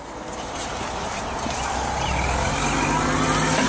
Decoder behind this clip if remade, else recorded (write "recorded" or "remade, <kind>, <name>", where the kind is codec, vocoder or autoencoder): recorded